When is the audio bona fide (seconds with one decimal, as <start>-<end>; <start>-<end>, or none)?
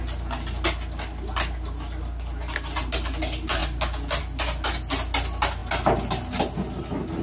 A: 0.0-7.2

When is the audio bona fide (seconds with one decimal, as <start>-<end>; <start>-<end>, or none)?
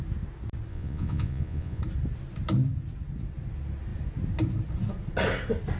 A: 0.0-0.7; 1.8-5.8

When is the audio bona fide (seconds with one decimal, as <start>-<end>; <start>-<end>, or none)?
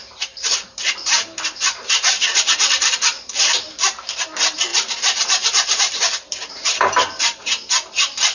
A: none